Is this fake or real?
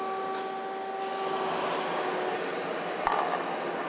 real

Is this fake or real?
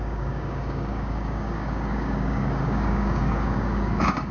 fake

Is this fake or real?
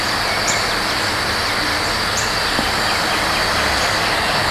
real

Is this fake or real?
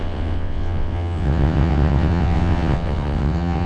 fake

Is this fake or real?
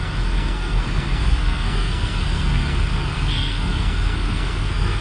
fake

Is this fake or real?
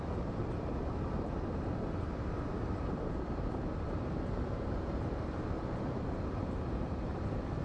fake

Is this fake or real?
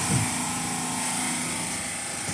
real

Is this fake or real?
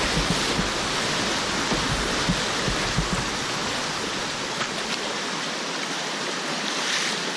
real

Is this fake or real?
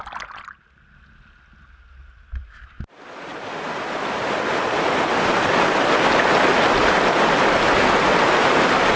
real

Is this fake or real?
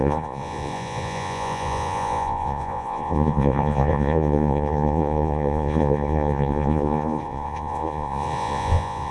fake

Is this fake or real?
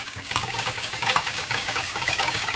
fake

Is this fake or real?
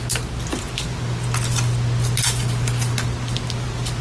real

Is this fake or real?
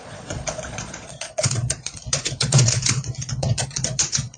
fake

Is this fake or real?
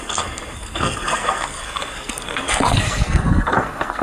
fake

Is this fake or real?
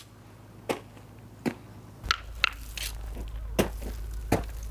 real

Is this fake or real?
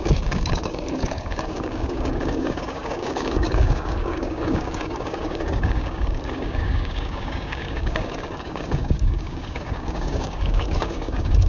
fake